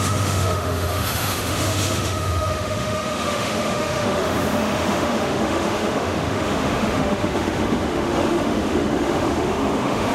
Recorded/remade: remade